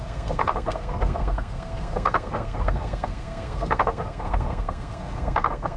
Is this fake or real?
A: fake